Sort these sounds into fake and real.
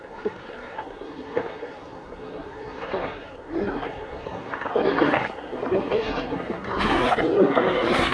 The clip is fake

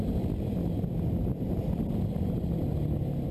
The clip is real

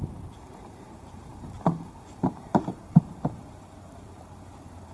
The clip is fake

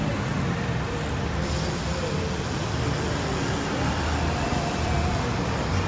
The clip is real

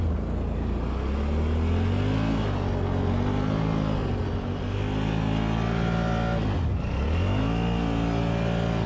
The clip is real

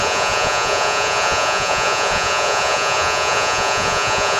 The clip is fake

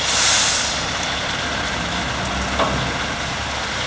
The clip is real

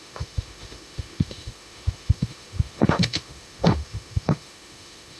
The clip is fake